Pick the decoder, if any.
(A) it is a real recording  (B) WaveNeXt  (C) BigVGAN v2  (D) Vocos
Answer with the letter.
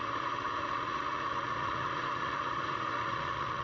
D